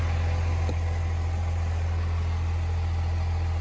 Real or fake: real